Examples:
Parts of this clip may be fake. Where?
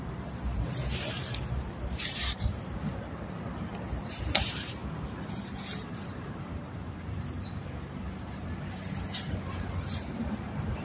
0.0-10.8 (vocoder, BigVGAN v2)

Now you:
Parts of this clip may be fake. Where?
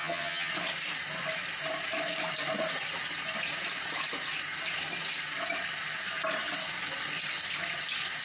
0.0-0.5 (vocoder, HiFi-GAN)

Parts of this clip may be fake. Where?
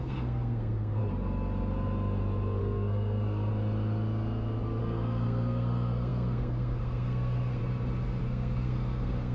0.0-1.0 (codec, SNAC); 2.6-3.5; 4.8-7.6; 8.2-9.3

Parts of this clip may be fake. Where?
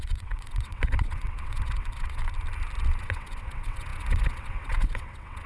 0.0-2.2 (vocoder, WaveNeXt); 3.0-5.5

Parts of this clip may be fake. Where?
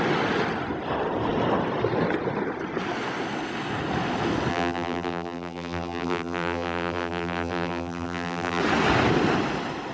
4.5-8.6 (vocoder, BigVGAN v2)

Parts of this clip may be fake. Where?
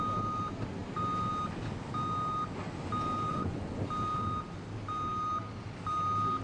3.3-3.9 (vocoder, Vocos)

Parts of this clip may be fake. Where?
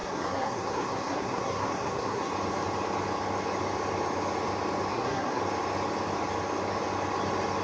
0.0-2.3 (codec, SNAC); 4.9-5.4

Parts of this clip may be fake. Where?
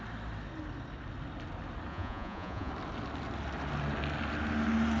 1.9-2.7 (vocoder, Vocos)